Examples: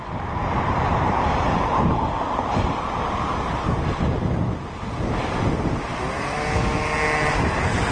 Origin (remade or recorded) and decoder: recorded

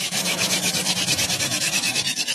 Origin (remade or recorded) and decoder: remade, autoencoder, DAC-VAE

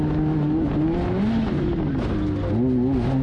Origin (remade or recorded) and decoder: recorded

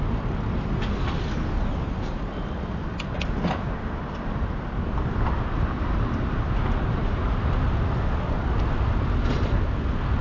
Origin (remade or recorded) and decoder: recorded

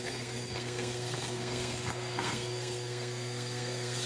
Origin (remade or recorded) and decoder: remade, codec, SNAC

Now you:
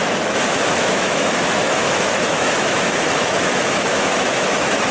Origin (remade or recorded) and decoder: remade, autoencoder, DAC-VAE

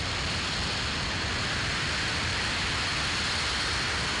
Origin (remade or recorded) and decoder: recorded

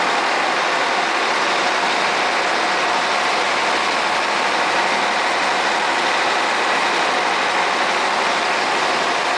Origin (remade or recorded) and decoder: recorded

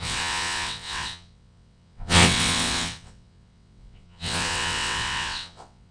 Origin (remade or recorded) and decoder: remade, vocoder, WaveNeXt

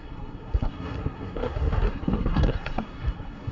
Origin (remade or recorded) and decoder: remade, codec, SNAC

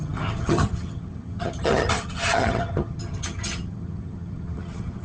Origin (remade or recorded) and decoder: remade, vocoder, HiFi-GAN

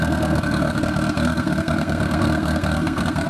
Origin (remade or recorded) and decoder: remade, codec, SNAC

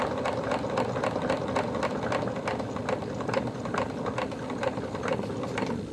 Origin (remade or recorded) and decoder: recorded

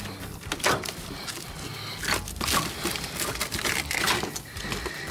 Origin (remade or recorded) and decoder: recorded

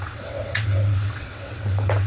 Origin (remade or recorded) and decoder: remade, vocoder, WaveNeXt